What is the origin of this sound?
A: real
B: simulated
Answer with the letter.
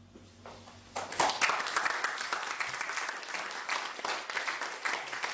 A